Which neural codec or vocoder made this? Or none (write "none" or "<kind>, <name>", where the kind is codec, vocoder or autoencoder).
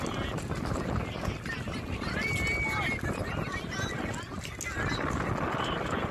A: none